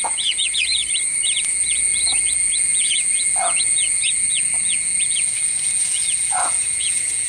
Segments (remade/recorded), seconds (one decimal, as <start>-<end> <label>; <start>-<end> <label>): 0.0-0.8 remade; 0.8-1.4 recorded; 1.4-7.3 remade